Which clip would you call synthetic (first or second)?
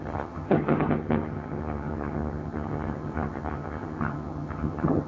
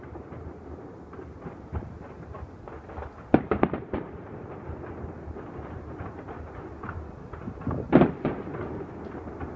first